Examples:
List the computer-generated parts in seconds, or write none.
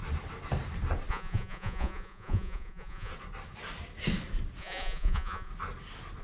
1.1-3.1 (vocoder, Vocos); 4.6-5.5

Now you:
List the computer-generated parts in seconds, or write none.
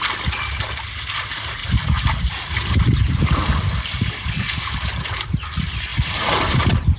1.6-3.4 (vocoder, BigVGAN v2); 5.9-7.0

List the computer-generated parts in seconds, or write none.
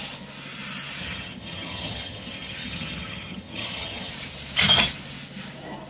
1.0-4.1 (vocoder, HiFi-GAN)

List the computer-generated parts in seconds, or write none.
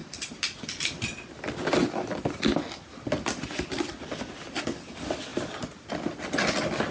none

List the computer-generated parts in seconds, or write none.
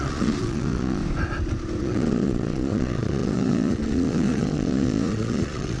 0.0-1.0 (vocoder, Vocos); 1.8-5.8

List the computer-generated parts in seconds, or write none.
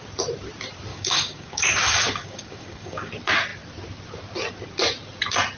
0.9-3.1 (codec, DAC)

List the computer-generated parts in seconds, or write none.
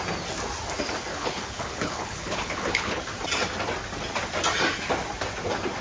1.1-3.0 (codec, HILCodec)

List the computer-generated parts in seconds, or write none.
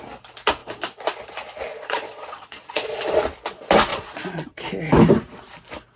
1.7-3.0 (vocoder, Vocos); 3.9-4.6